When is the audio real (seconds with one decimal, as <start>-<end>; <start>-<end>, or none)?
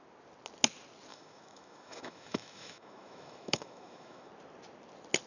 0.0-1.1; 4.3-5.3